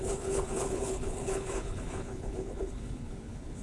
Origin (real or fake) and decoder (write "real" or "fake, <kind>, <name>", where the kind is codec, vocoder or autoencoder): fake, codec, HILCodec